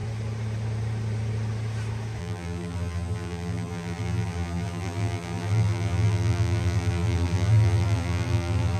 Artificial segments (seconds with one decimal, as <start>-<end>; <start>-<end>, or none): 2.2-8.8